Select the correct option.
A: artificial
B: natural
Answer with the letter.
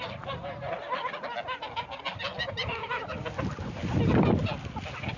B